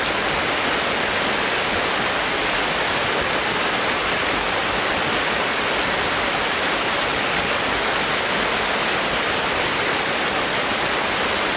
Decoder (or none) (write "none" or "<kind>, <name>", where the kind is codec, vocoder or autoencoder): none